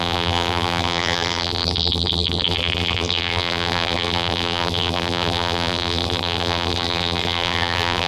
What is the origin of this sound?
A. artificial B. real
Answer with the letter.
A